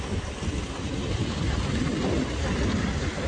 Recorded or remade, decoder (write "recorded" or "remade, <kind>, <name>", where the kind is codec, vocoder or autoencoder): recorded